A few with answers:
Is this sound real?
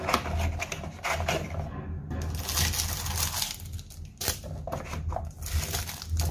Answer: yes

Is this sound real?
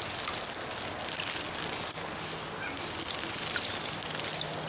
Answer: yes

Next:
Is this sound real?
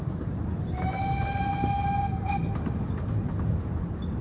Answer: yes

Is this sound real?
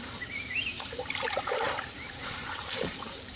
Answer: no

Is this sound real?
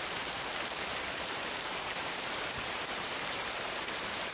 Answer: no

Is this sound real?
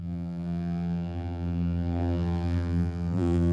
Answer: no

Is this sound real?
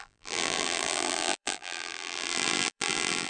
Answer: no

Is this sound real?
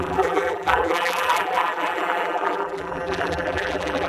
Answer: no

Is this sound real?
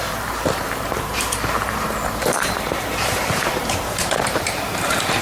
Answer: no